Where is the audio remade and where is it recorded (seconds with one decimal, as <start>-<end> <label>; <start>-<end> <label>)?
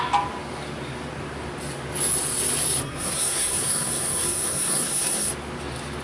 0.0-2.8 recorded; 2.8-5.3 remade; 5.3-6.0 recorded